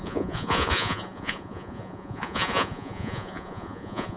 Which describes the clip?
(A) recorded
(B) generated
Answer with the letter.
B